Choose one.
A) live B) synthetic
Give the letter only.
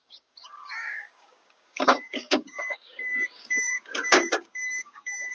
B